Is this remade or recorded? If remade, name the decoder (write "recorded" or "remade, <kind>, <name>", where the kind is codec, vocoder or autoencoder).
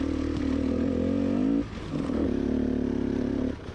recorded